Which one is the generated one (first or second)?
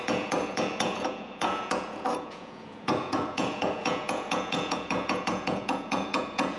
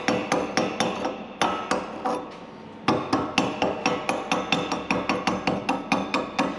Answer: first